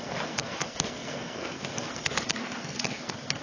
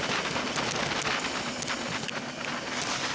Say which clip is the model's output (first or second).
first